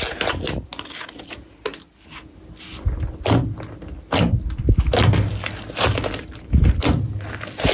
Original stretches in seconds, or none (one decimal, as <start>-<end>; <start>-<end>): 0.0-7.7